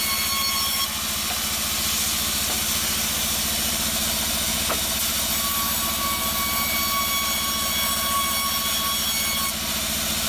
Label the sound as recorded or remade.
recorded